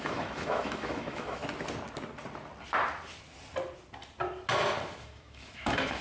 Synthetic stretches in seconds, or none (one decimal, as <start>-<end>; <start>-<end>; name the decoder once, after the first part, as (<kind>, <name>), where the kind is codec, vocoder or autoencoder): 0.0-1.4 (autoencoder, DAC-VAE); 5.0-6.0